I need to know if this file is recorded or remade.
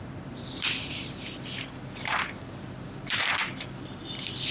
remade